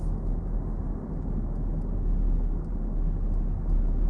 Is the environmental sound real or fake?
real